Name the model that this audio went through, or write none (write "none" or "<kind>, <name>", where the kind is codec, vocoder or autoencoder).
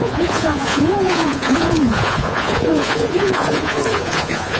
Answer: vocoder, Vocos